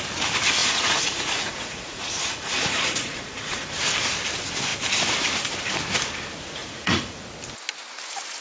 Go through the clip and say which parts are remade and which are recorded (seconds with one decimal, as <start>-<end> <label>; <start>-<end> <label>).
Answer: 0.0-0.6 recorded; 0.6-3.7 remade; 3.7-6.6 recorded; 6.6-7.2 remade; 7.2-8.4 recorded